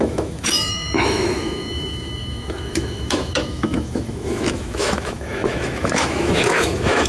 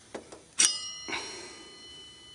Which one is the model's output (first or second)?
first